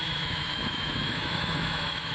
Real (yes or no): no